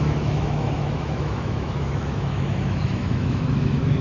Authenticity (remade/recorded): remade